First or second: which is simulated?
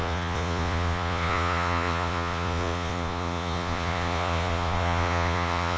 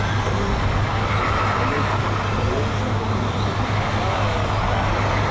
first